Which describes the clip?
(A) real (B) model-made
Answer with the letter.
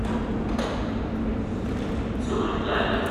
A